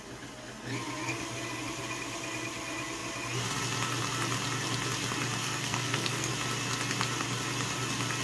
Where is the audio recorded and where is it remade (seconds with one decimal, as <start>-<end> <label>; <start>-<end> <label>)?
0.0-5.4 recorded; 5.4-6.3 remade; 6.3-8.2 recorded